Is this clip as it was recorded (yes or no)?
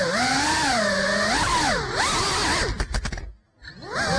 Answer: yes